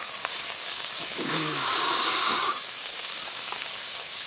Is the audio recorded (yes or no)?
no